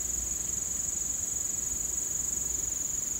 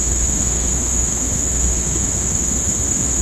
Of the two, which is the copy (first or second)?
second